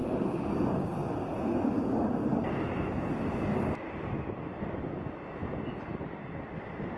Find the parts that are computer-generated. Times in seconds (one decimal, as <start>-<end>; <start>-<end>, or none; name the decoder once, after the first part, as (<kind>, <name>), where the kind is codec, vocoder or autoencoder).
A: 0.0-1.0 (vocoder, BigVGAN v2); 3.1-7.0